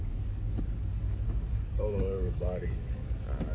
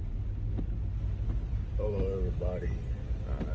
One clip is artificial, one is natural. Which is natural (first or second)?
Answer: second